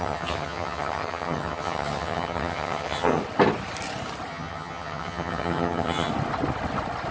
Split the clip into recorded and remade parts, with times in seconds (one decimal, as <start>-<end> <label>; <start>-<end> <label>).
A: 0.0-3.2 remade; 3.2-4.3 recorded; 4.3-6.1 remade; 6.1-7.1 recorded